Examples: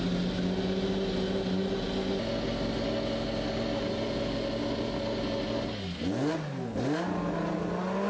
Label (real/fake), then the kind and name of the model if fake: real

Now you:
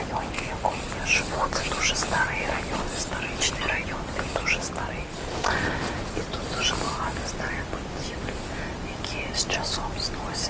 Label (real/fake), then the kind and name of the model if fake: real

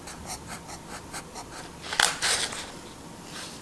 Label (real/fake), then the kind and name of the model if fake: real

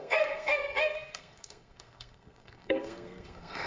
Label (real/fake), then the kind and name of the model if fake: fake, codec, SNAC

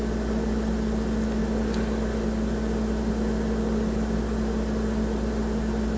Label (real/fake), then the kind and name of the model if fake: real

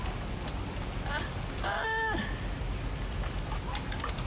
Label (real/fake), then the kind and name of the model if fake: real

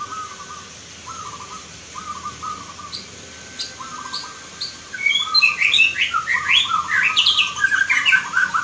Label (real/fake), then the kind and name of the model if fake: real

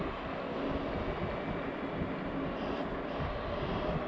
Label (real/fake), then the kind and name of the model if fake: real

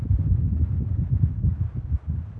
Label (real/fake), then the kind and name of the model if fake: real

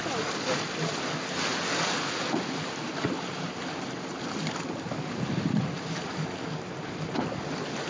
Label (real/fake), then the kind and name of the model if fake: real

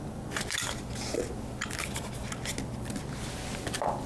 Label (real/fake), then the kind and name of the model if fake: real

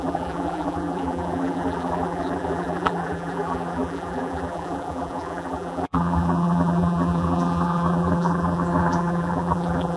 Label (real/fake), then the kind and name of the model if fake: fake, vocoder, BigVGAN v2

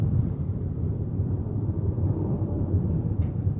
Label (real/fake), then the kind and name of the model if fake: fake, vocoder, BigVGAN v2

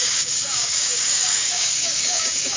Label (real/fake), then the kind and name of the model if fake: fake, codec, DAC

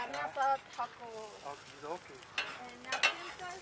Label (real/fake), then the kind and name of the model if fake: real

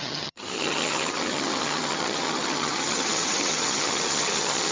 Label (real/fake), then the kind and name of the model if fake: fake, vocoder, HiFi-GAN